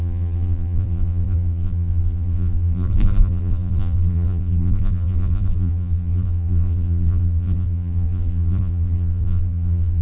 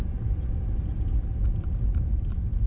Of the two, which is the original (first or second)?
second